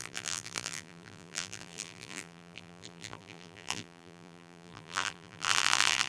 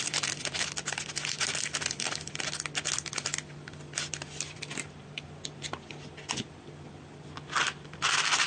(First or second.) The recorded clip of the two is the second